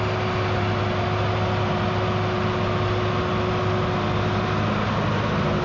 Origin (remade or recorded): recorded